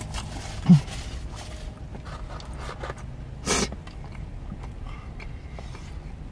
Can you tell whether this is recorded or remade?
recorded